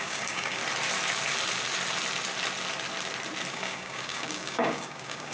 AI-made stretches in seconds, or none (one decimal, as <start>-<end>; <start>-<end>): 0.0-0.6; 3.5-5.3